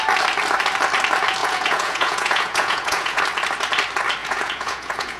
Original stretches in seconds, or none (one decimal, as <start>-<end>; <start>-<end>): 0.0-1.4; 3.2-4.2